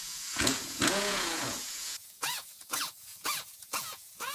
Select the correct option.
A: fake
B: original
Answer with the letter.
A